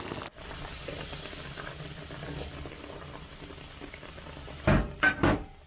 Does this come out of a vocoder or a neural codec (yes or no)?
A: no